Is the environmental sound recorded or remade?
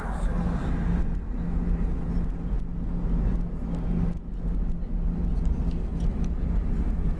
recorded